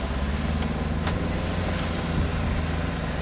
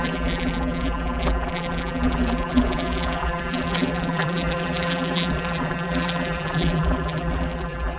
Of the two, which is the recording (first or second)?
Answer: first